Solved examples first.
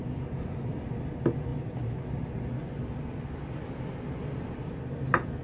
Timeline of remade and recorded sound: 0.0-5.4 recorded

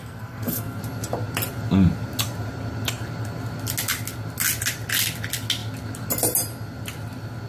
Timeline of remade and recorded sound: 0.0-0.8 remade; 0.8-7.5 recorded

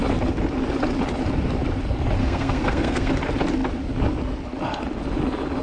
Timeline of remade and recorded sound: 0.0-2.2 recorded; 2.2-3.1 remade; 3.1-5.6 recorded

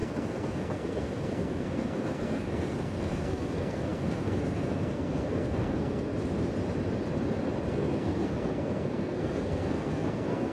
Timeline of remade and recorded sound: 0.0-6.1 remade; 6.1-7.7 recorded; 7.7-10.5 remade

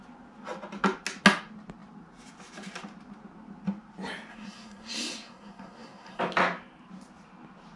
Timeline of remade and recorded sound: 0.0-4.3 recorded; 4.3-6.2 remade; 6.2-7.8 recorded

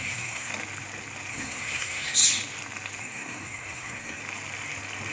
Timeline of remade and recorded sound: 0.0-0.5 remade; 0.5-1.3 recorded; 1.3-2.2 remade; 2.2-3.0 recorded; 3.0-4.2 remade; 4.2-5.1 recorded